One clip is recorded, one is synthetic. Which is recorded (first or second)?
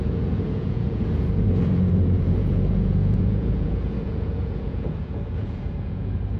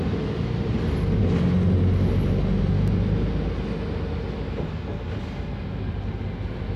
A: second